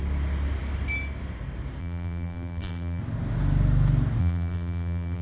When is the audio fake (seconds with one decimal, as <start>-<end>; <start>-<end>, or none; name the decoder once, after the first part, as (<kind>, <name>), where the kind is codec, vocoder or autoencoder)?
1.8-3.0 (vocoder, BigVGAN v2); 4.2-5.2